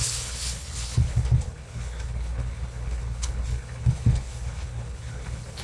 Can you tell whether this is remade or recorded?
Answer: remade